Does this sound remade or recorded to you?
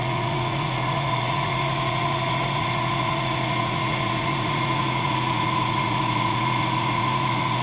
remade